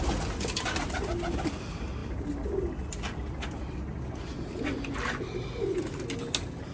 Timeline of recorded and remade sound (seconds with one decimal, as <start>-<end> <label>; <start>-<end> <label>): 0.0-6.7 recorded